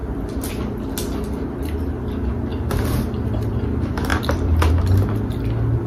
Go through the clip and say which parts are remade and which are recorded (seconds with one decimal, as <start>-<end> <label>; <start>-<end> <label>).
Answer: 0.0-0.5 remade; 0.5-2.5 recorded; 2.5-3.0 remade; 3.0-4.1 recorded; 4.1-4.7 remade; 4.7-5.9 recorded